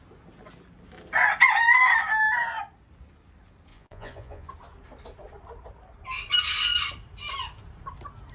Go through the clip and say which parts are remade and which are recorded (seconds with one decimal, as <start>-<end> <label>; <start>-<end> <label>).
0.0-3.7 recorded; 3.7-4.5 remade; 4.5-8.3 recorded